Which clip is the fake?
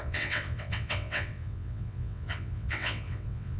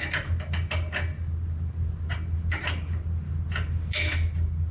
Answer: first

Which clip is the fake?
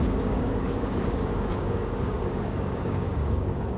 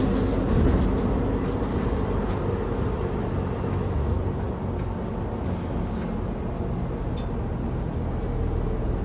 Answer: first